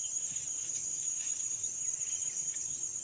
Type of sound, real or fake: fake